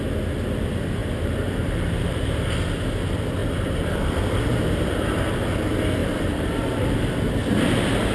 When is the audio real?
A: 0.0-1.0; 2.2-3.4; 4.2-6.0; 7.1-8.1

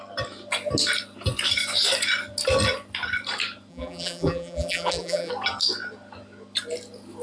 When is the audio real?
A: 0.0-3.7; 5.3-7.2

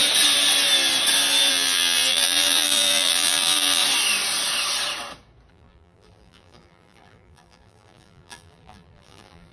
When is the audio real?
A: 0.0-1.5; 3.8-5.5

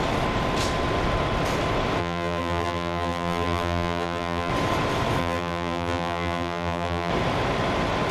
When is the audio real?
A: 0.0-2.0; 4.5-5.2; 7.1-8.1

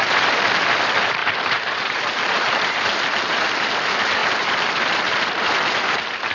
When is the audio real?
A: 0.0-1.2; 2.8-6.3